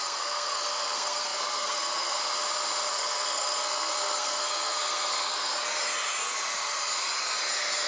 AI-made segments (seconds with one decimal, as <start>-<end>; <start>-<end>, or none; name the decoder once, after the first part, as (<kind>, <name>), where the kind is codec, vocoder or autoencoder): 0.0-2.2 (codec, SNAC); 2.9-5.5